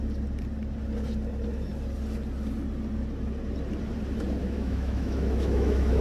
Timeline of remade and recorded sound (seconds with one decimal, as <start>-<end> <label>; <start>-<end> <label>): 0.0-4.4 recorded; 4.4-6.0 remade